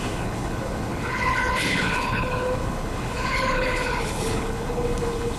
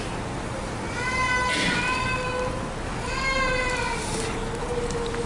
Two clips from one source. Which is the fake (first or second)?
first